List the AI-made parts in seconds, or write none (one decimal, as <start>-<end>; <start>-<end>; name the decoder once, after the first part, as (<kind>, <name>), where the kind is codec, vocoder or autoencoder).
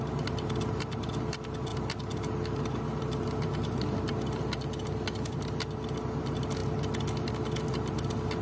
none